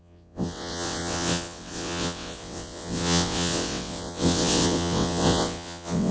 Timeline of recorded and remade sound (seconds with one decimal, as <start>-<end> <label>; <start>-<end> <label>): 0.0-6.1 remade